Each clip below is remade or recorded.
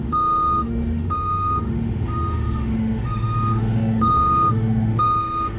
remade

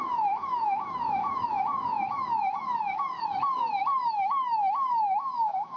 remade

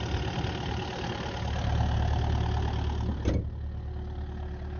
recorded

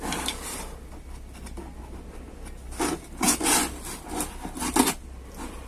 recorded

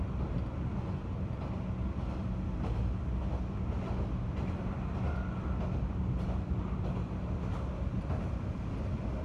recorded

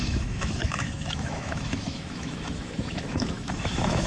remade